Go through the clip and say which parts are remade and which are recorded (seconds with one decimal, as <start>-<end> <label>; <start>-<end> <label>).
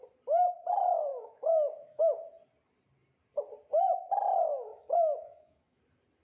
0.0-1.1 recorded; 1.1-2.0 remade; 2.0-4.7 recorded; 4.7-5.8 remade; 5.8-6.2 recorded